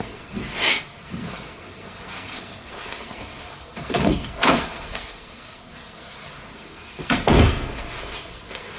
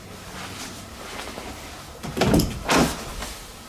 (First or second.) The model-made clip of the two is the first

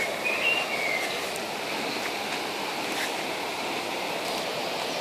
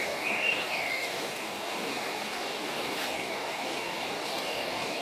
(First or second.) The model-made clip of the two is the second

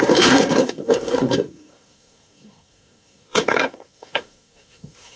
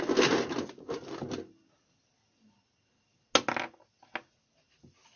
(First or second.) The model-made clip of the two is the first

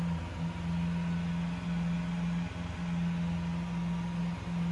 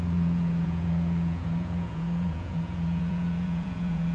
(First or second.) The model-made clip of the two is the second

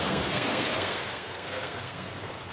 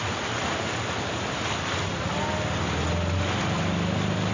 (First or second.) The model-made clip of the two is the first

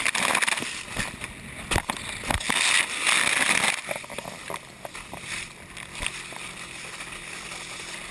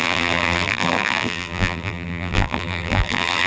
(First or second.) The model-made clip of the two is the second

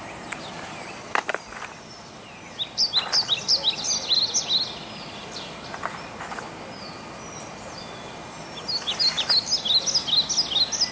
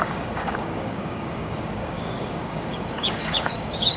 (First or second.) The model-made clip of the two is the second